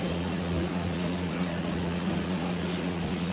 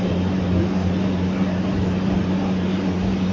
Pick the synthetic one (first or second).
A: first